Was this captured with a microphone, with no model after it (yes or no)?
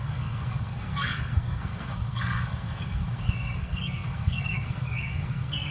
no